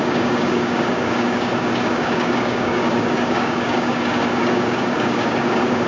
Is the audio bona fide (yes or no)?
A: no